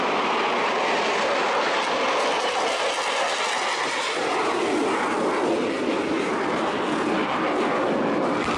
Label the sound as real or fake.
real